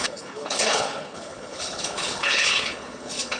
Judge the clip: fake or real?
fake